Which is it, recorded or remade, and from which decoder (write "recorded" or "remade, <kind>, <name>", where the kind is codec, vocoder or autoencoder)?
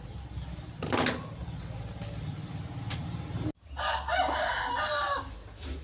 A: recorded